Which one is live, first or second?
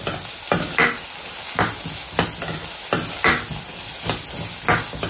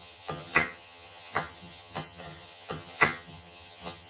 first